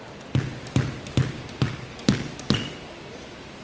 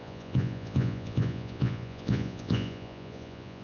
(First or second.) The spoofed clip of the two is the second